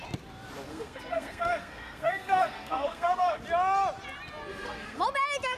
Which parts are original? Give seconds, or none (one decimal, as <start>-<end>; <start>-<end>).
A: 0.0-0.7; 3.4-4.5; 5.0-5.6